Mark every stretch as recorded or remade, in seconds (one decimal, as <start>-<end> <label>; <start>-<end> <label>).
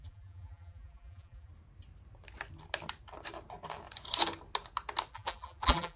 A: 0.0-1.5 remade; 1.5-5.1 recorded; 5.1-6.0 remade